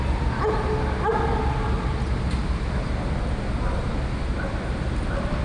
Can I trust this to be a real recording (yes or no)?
yes